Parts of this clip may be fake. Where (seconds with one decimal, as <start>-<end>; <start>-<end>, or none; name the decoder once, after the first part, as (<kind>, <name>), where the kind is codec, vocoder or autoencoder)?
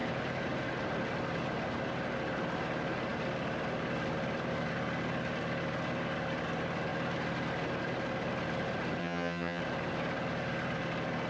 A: 9.0-9.6 (vocoder, HiFi-GAN)